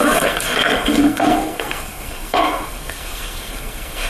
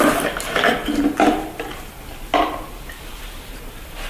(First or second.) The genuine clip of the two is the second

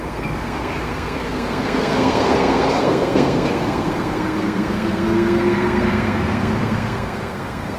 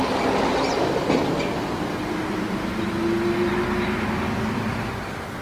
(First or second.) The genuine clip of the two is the second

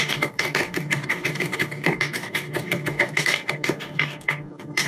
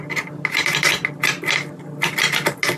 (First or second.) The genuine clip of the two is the second